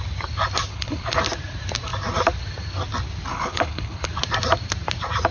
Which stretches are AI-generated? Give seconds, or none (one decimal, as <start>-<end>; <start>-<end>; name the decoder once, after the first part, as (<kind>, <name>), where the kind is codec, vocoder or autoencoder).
0.7-1.2 (codec, HILCodec); 3.3-4.1